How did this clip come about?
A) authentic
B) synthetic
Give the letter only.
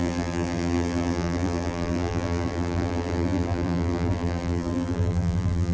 B